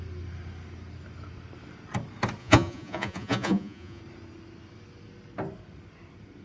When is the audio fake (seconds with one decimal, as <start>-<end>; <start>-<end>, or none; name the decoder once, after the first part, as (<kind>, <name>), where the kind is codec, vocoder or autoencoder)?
2.4-4.0 (vocoder, Vocos)